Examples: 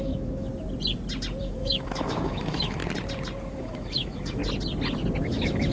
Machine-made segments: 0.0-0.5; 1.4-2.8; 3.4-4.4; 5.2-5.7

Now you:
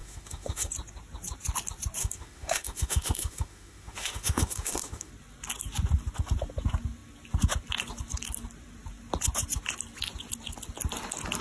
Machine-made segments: 0.0-0.7; 2.0-5.1

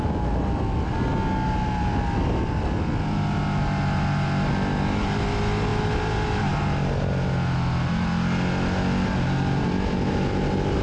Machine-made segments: none

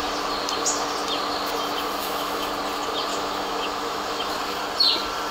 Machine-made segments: 2.0-2.5; 3.1-4.3

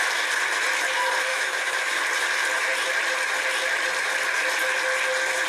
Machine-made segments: 1.3-2.0

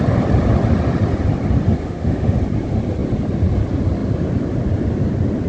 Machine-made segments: 1.8-2.4

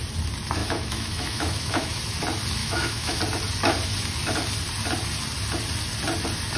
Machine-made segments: 0.6-2.0; 2.6-3.2